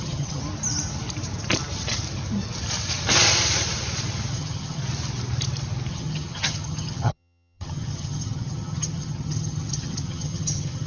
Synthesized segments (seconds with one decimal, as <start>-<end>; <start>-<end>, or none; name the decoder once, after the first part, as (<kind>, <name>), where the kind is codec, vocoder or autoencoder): 0.0-0.4 (vocoder, HiFi-GAN); 4.3-4.8; 5.9-10.9